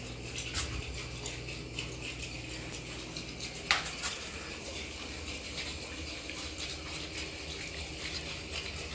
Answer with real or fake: real